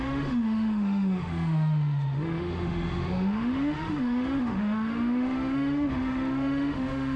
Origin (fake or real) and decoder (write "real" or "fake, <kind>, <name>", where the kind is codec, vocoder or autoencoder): fake, autoencoder, DAC-VAE